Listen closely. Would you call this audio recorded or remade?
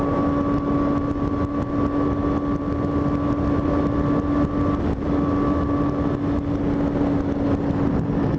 recorded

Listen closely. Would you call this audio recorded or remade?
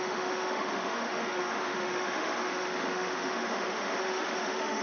remade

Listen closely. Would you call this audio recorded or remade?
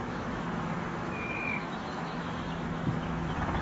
remade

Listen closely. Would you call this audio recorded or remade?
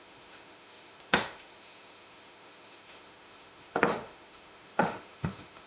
remade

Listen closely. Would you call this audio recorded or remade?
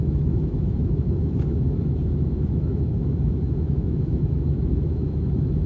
remade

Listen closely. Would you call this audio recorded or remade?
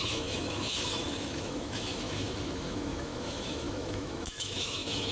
remade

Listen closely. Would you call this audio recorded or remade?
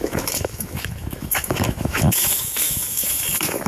remade